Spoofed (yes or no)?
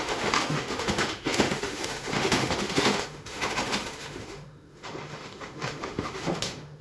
yes